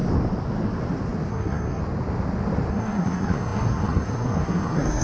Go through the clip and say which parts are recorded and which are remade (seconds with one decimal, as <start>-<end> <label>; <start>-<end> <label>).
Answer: 0.0-1.3 recorded; 1.3-1.8 remade; 1.8-2.7 recorded; 2.7-5.0 remade